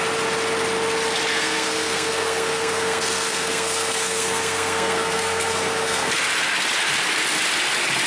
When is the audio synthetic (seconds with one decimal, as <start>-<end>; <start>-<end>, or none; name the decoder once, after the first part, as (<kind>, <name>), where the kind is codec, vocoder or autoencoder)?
1.3-6.1 (codec, SNAC)